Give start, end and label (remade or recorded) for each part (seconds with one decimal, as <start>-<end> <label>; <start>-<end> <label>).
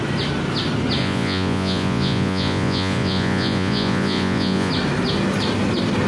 0.0-1.0 recorded; 1.0-4.7 remade; 4.7-6.1 recorded